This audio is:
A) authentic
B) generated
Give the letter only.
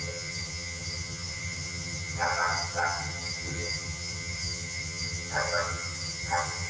B